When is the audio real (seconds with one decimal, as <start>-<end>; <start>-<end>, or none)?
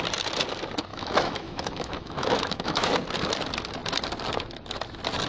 0.0-0.9; 2.9-5.3